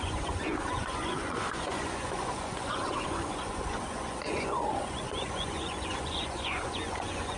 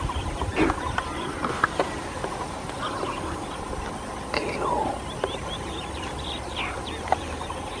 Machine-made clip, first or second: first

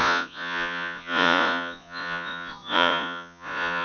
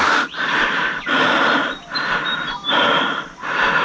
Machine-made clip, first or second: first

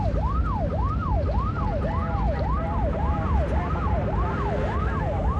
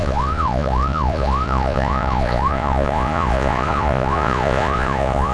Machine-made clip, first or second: second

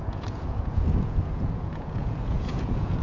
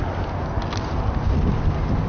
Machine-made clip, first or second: first